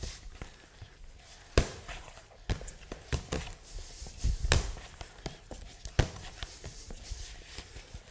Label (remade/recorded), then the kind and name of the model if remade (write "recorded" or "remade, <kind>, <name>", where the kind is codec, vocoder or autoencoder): recorded